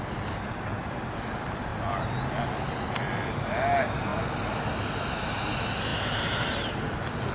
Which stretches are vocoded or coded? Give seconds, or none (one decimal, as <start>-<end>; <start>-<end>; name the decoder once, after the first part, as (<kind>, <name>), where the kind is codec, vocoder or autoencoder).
none